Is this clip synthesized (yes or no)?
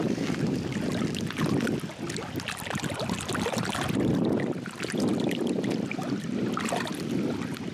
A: no